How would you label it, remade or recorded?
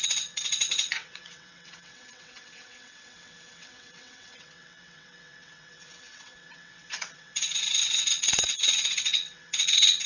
remade